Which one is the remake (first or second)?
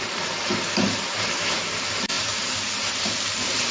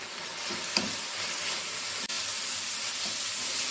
first